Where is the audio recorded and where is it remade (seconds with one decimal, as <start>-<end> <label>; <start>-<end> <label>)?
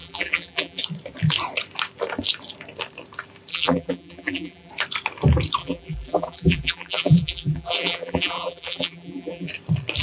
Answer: 0.0-0.8 remade; 0.8-3.5 recorded; 3.5-4.7 remade; 4.7-5.6 recorded; 5.6-9.5 remade; 9.5-10.0 recorded